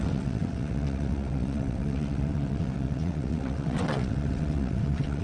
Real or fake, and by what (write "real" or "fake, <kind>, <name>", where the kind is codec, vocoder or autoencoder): fake, vocoder, WaveNeXt